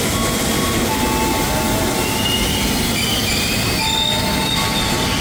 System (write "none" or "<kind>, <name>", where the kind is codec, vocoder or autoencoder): none